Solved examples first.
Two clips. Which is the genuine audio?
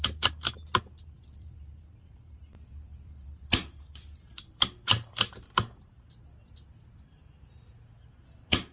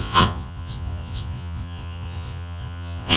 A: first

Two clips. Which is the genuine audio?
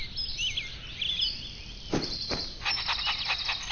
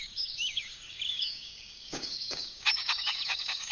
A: first